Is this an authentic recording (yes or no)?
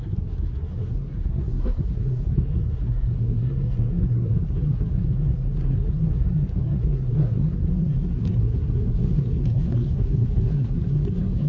no